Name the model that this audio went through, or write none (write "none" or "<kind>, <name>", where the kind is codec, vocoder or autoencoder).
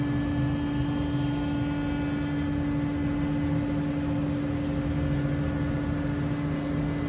none